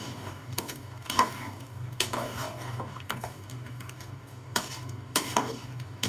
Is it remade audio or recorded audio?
remade